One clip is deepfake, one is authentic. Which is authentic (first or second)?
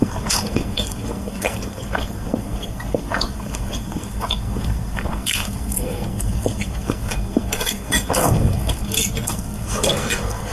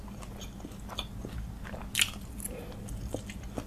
second